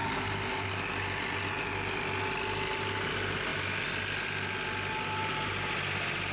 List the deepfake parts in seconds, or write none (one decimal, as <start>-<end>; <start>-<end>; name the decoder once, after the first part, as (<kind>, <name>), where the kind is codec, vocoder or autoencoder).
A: none